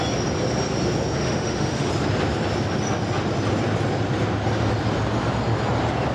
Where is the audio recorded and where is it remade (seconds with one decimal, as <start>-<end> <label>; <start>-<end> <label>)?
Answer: 0.0-1.2 recorded; 1.2-1.9 remade; 1.9-6.1 recorded